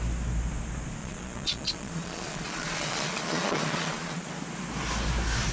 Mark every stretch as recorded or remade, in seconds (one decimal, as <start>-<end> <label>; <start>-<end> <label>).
0.0-1.0 recorded; 1.0-4.3 remade; 4.3-5.5 recorded